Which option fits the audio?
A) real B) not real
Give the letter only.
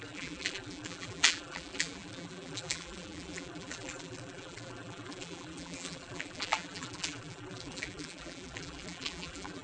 B